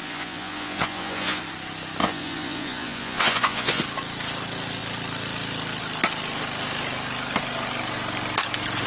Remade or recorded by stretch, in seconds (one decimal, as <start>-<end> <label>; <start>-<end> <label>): 0.0-1.4 remade; 1.4-2.0 recorded; 2.0-3.8 remade; 3.8-8.9 recorded